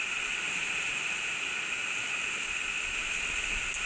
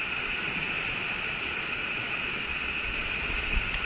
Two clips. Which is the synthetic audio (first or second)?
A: second